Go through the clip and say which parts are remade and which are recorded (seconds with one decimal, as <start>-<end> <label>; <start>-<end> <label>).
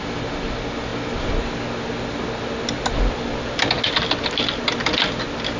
0.0-5.6 recorded